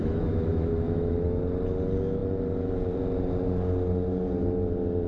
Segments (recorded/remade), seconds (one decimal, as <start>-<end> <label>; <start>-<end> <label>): 0.0-1.4 remade; 1.4-5.1 recorded

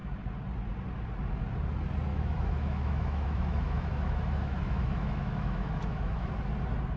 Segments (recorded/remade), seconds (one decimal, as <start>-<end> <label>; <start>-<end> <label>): 0.0-2.1 recorded; 2.1-6.3 remade; 6.3-7.0 recorded

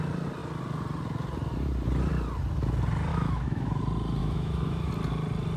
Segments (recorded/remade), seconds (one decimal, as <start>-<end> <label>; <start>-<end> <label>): 0.0-3.1 recorded; 3.1-3.8 remade; 3.8-4.2 recorded; 4.2-4.9 remade; 4.9-5.6 recorded

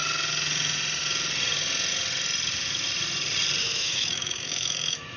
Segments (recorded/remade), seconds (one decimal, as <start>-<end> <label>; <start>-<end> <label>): 0.0-3.6 recorded; 3.6-5.2 remade

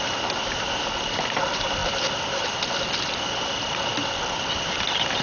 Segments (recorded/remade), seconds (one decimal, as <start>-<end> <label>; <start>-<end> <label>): 0.0-5.2 recorded

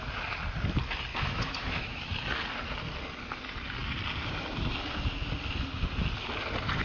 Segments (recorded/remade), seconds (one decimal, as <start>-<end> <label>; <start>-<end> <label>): 0.0-1.1 recorded; 1.1-2.1 remade; 2.1-6.8 recorded

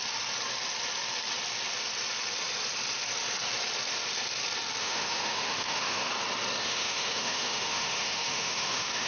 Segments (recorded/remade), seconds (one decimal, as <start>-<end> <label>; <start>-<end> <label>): 0.0-4.8 recorded; 4.8-6.1 remade; 6.1-6.6 recorded; 6.6-9.1 remade

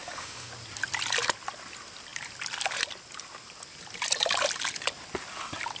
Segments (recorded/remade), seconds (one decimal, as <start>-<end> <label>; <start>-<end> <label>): 0.0-0.5 remade; 0.5-5.8 recorded